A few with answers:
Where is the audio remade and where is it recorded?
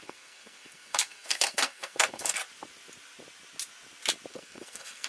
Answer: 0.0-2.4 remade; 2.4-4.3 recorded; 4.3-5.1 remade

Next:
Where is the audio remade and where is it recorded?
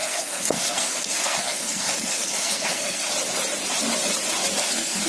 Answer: 0.0-3.1 remade; 3.1-4.6 recorded; 4.6-5.1 remade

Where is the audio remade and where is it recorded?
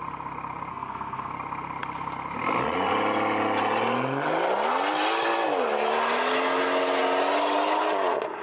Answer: 0.0-0.7 recorded; 0.7-1.3 remade; 1.3-8.4 recorded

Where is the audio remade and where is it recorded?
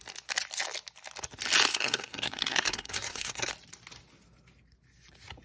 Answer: 0.0-1.7 recorded; 1.7-3.5 remade; 3.5-5.4 recorded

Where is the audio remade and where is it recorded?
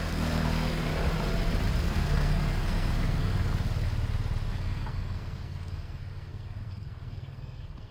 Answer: 0.0-0.9 remade; 0.9-1.8 recorded; 1.8-3.5 remade; 3.5-4.5 recorded; 4.5-7.9 remade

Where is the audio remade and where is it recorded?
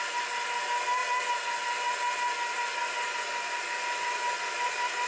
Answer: 0.0-5.1 recorded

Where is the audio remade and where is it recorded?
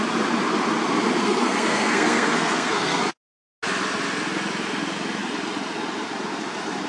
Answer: 0.0-1.2 recorded; 1.2-3.0 remade; 3.0-6.9 recorded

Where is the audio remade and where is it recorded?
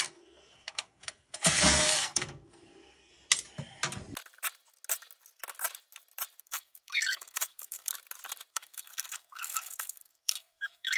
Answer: 0.0-3.1 remade; 3.1-6.4 recorded; 6.4-7.9 remade; 7.9-8.5 recorded; 8.5-11.0 remade